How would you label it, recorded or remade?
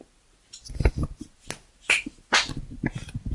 recorded